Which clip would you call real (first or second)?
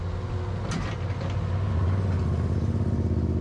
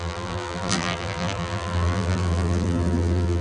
first